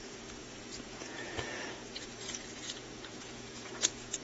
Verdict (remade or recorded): remade